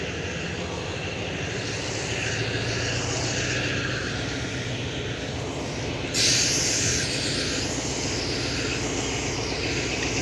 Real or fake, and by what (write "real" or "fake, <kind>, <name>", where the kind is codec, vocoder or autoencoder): real